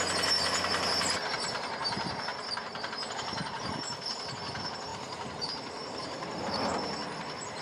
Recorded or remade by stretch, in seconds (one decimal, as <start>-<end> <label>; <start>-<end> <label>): 0.0-2.3 recorded; 2.3-3.1 remade; 3.1-4.9 recorded; 4.9-6.4 remade; 6.4-7.6 recorded